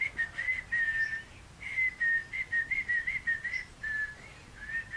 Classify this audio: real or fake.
real